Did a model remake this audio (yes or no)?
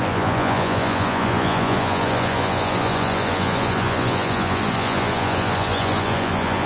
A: yes